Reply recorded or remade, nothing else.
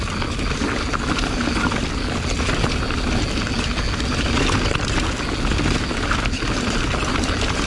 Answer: recorded